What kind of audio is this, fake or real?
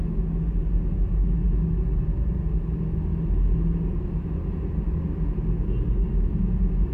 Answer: real